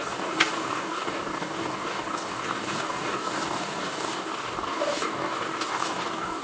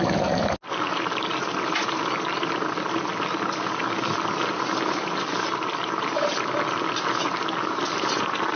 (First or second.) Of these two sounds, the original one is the second